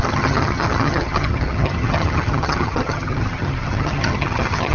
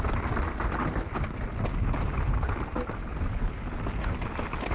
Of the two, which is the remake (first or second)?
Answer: first